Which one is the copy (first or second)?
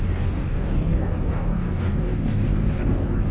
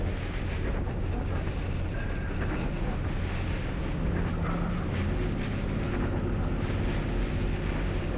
first